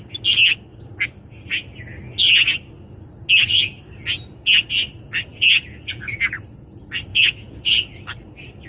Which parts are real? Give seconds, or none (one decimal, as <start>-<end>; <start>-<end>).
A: 0.0-5.3; 6.2-7.1; 8.0-8.7